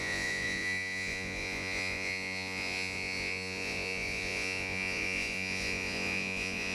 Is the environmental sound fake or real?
fake